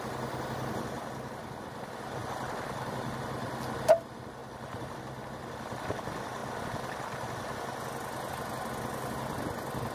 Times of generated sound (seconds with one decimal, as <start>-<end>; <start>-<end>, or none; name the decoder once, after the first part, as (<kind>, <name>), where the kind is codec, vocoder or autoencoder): none